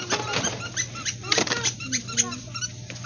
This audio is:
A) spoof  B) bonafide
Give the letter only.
B